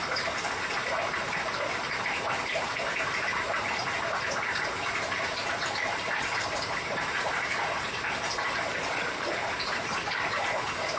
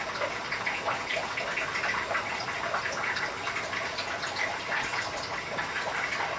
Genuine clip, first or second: second